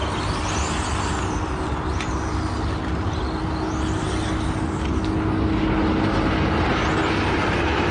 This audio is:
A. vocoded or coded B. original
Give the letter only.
B